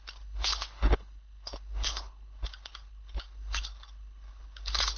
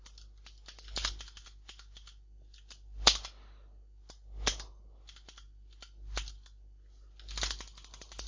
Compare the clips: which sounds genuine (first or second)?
second